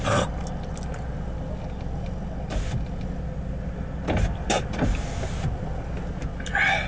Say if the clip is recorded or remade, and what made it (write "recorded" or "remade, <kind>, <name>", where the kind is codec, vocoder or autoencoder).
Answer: recorded